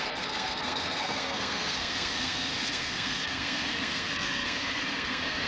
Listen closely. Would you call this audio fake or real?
fake